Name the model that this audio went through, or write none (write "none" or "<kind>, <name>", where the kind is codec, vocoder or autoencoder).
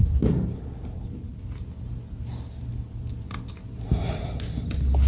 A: none